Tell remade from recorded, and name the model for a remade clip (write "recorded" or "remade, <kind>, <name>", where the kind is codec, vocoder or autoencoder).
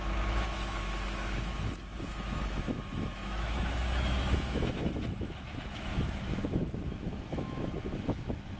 remade, autoencoder, DAC-VAE